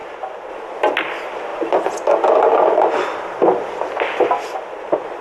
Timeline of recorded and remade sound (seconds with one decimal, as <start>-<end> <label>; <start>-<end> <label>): 0.0-5.2 recorded